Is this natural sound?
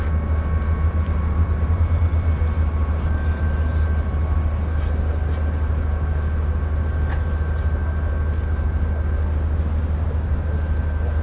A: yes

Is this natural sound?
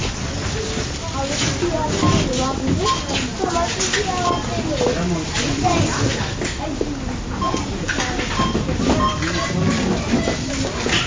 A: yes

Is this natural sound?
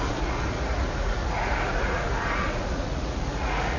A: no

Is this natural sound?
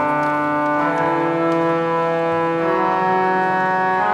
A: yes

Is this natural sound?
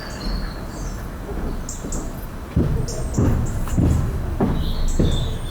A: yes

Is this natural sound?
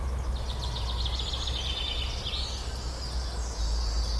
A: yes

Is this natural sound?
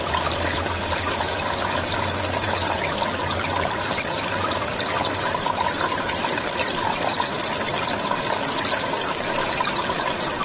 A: no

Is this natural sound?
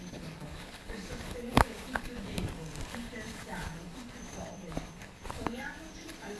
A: no